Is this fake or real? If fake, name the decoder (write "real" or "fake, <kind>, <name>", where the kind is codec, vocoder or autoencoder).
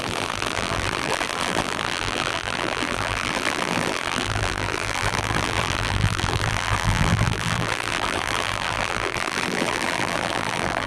fake, vocoder, BigVGAN v2